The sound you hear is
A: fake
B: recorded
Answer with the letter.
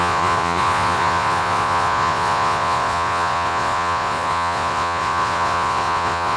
A